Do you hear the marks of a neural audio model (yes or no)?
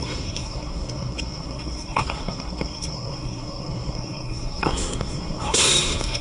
yes